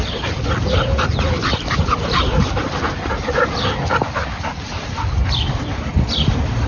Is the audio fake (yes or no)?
yes